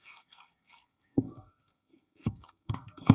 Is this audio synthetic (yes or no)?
yes